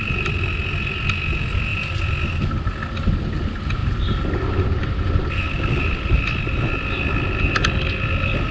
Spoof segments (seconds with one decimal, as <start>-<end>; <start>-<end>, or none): none